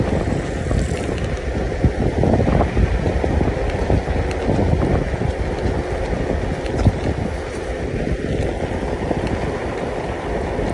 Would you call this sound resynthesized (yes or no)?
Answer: no